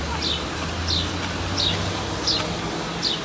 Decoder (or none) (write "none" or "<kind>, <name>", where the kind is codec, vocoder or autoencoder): none